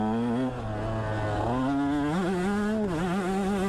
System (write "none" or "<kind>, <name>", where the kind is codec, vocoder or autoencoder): none